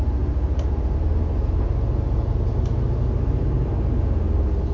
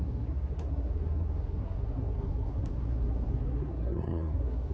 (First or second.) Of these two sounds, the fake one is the second